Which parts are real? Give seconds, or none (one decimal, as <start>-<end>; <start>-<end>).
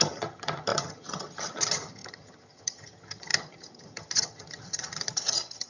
none